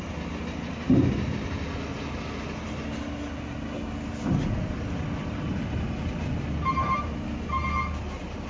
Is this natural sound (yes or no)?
yes